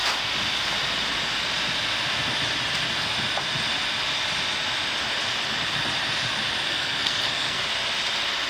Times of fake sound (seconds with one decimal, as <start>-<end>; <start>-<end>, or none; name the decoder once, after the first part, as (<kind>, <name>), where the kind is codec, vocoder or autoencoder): 6.7-7.6 (codec, SNAC)